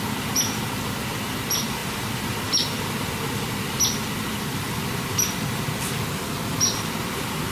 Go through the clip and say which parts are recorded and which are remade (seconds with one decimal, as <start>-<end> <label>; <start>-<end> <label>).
0.0-7.5 recorded